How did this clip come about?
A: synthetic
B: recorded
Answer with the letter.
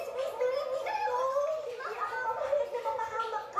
B